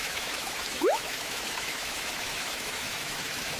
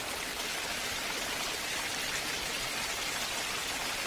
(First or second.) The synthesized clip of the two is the first